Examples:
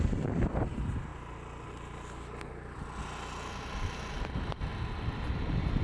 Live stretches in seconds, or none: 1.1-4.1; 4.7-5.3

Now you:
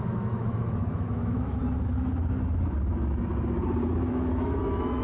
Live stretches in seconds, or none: 1.6-4.1

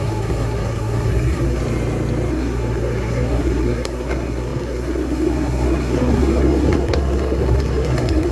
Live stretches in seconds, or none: 1.6-2.3

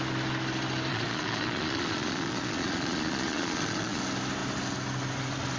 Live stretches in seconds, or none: 0.0-0.9; 4.0-5.6